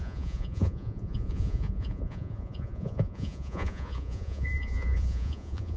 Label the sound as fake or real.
fake